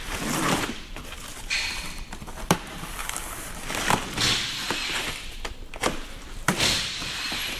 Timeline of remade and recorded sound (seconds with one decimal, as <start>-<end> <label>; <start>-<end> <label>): 0.0-3.2 remade; 3.2-5.0 recorded; 5.0-7.6 remade